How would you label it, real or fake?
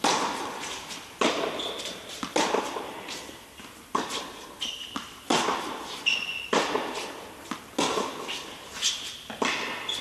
real